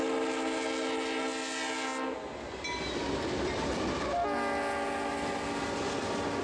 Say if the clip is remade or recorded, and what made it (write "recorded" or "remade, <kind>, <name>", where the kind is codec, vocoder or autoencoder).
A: recorded